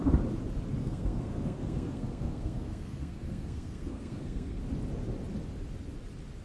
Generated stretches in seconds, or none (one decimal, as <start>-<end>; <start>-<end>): 0.8-4.6